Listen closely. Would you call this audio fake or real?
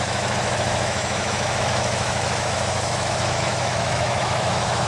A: fake